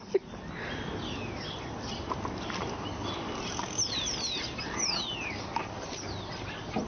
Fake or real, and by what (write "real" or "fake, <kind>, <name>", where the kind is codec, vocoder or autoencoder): real